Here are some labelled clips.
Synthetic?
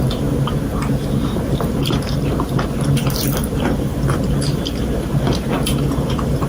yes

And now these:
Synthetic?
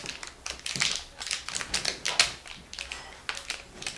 no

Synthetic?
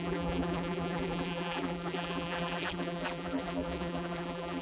yes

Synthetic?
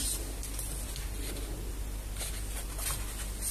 no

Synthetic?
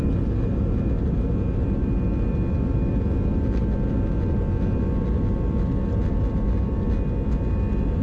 no